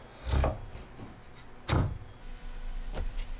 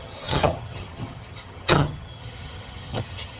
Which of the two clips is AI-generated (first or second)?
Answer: second